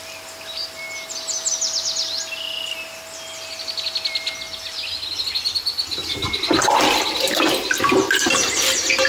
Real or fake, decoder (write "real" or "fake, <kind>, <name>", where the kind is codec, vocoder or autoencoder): real